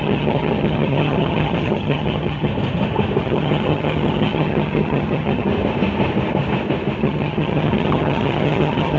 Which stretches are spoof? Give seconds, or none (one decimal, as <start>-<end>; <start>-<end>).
0.0-2.5; 3.2-5.5; 7.0-9.0